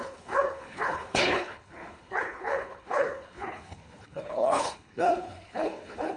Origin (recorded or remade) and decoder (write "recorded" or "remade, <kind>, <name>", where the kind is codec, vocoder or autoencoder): remade, codec, HILCodec